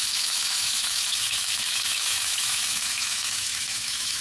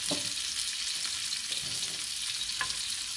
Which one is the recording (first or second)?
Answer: second